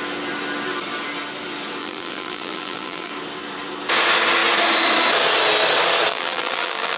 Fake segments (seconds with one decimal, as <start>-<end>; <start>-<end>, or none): 1.8-3.1; 6.1-7.0